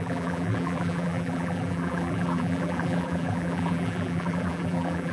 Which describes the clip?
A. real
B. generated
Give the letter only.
B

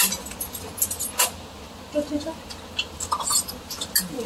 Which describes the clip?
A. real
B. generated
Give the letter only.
A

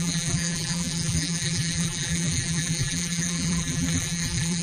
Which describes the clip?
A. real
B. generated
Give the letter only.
B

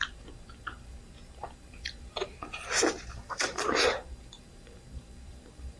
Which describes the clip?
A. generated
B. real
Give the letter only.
A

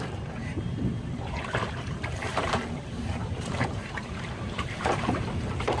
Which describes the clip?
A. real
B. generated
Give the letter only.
B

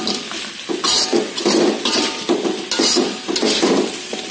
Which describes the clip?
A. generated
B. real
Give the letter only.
B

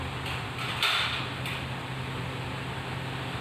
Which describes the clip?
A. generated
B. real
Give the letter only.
A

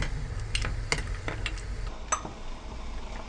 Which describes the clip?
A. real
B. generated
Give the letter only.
A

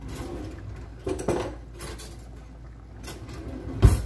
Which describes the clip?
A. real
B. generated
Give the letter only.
A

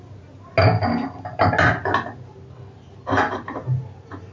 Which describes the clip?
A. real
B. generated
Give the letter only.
A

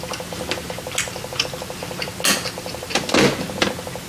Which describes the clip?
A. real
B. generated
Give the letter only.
A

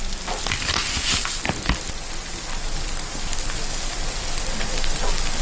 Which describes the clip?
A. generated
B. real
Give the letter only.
B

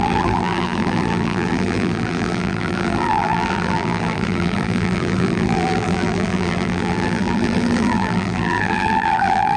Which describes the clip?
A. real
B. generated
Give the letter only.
B